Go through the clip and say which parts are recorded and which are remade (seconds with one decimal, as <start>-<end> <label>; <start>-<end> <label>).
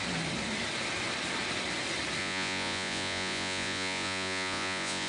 0.0-2.2 recorded; 2.2-5.1 remade